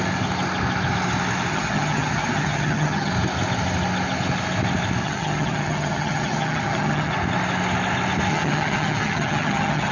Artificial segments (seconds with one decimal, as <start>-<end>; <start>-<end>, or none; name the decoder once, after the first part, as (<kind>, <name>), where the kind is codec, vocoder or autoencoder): 1.5-3.1 (vocoder, HiFi-GAN); 5.0-7.1; 8.3-9.9